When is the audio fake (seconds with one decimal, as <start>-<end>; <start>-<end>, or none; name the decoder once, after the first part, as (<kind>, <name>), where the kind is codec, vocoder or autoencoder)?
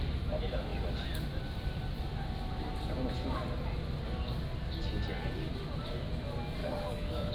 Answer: 6.6-7.3 (codec, DAC)